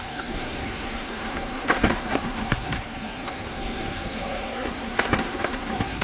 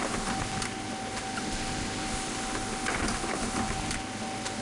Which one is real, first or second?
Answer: second